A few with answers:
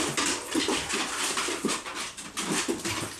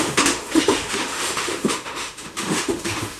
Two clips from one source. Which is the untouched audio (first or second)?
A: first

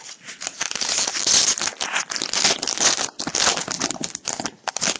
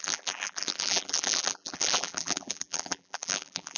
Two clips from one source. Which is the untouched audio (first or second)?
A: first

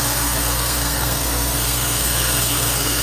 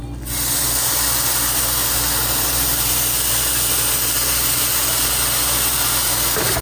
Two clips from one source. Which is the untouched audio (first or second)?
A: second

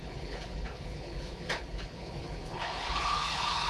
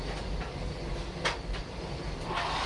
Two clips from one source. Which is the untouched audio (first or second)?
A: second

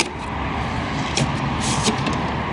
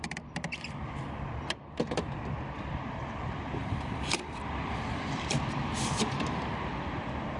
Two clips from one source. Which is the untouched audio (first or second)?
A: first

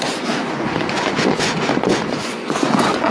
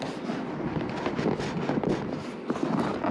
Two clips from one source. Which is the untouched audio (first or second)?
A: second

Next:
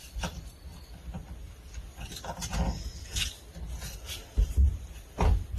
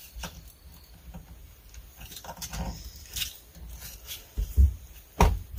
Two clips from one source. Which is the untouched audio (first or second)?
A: second